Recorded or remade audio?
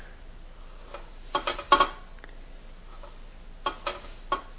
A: recorded